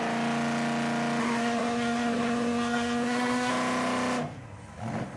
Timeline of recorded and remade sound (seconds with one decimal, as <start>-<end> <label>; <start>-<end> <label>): 0.0-1.2 recorded; 1.2-3.5 remade; 3.5-5.2 recorded